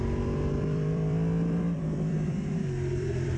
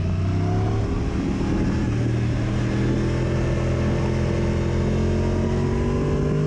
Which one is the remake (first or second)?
first